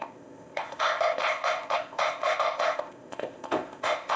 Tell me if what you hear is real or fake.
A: fake